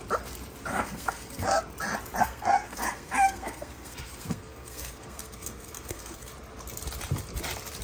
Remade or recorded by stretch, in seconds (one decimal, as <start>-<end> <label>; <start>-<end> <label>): 0.0-0.7 recorded; 0.7-1.6 remade; 1.6-2.2 recorded; 2.2-6.3 remade; 6.3-7.8 recorded